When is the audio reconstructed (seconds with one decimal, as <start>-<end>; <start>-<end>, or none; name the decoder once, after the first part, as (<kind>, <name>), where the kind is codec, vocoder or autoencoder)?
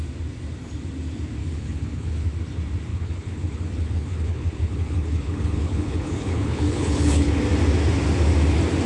1.4-2.1 (codec, HILCodec); 2.9-7.3